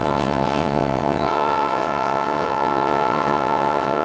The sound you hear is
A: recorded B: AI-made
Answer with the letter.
B